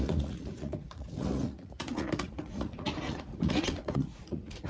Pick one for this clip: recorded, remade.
remade